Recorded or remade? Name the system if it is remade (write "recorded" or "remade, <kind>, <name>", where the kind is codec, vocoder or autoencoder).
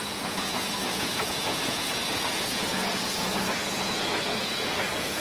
remade, vocoder, Vocos